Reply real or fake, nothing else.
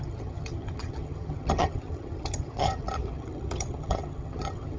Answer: fake